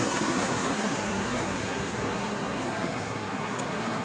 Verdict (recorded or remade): remade